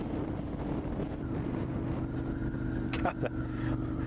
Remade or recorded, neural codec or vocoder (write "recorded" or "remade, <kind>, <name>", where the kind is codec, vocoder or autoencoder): recorded